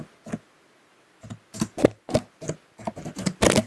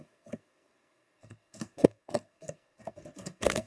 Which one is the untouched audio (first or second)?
first